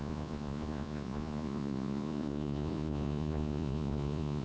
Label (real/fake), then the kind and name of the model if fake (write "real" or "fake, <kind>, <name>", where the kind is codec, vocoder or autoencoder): fake, vocoder, Vocos